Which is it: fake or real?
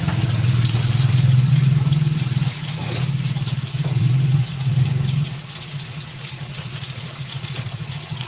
fake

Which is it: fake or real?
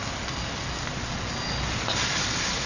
real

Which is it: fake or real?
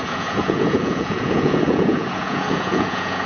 fake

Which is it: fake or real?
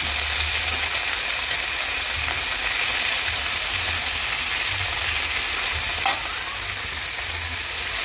real